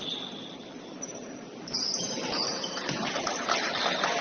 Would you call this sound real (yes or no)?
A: no